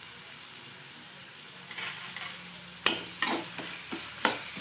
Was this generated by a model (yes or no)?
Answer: no